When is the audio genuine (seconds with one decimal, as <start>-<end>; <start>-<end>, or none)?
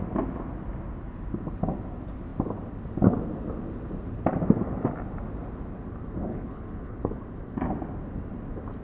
0.0-6.3; 7.1-8.8